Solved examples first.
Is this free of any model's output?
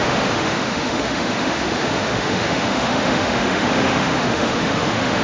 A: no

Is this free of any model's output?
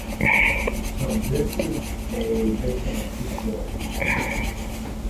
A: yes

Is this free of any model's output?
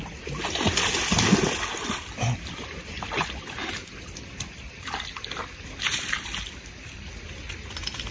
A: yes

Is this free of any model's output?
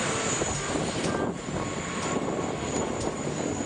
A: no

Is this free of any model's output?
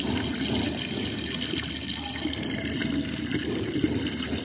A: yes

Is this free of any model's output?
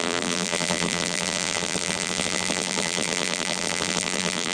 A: no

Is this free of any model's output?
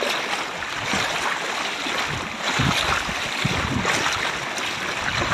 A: yes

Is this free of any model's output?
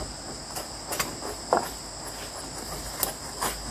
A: yes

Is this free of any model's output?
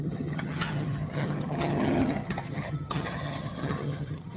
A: no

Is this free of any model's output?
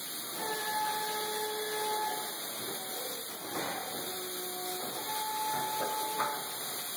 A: yes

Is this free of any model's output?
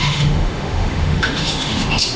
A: no